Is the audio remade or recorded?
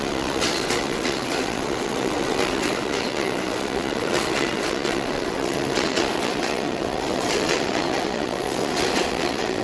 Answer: remade